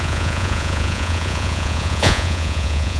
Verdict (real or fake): fake